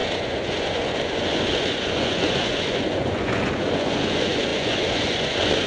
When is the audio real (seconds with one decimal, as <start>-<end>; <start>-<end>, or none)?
none